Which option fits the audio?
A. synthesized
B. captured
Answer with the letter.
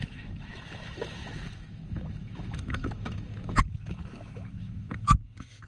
A